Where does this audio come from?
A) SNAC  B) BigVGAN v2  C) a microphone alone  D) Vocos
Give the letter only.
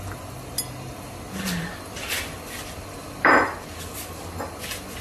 C